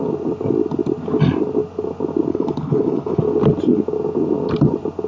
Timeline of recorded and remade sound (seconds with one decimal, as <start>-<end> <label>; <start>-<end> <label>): 0.0-2.3 recorded; 2.3-3.2 remade; 3.2-5.1 recorded